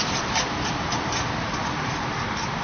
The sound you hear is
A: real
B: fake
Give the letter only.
B